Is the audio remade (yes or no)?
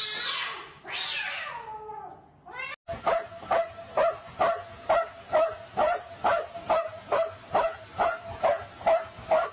no